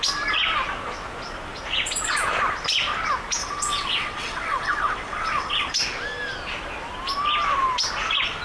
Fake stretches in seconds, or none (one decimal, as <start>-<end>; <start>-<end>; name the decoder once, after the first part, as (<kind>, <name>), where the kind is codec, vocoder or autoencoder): 3.4-5.7 (vocoder, WaveNeXt)